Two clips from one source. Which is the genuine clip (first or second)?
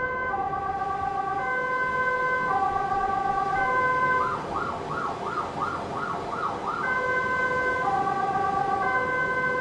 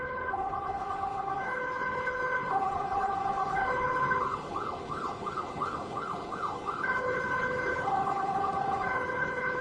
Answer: first